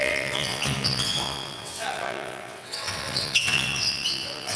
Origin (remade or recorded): remade